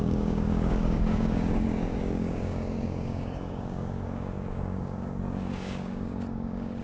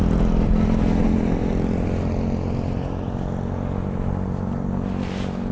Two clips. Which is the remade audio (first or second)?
first